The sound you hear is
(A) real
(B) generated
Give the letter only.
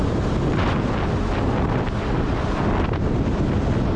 A